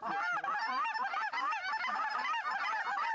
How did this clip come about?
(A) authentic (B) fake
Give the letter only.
A